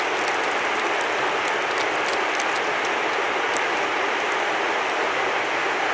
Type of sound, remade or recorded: recorded